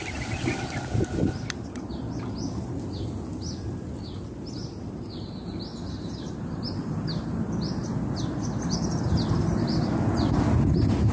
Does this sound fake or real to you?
real